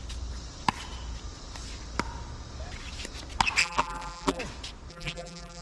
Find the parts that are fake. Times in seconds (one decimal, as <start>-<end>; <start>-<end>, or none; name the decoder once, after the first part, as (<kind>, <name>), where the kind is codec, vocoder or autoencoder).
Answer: 3.6-4.4 (vocoder, BigVGAN v2); 4.9-5.6